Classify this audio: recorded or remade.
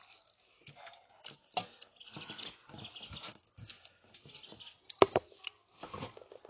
recorded